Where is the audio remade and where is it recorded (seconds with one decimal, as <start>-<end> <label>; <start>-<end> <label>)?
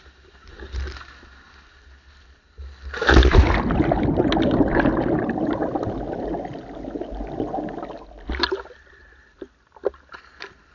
0.0-10.7 recorded